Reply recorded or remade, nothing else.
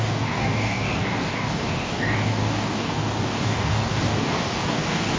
remade